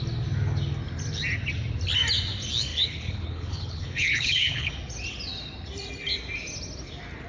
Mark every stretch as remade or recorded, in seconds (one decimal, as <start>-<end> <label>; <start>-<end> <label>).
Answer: 0.0-2.7 recorded; 2.7-4.7 remade; 4.7-7.3 recorded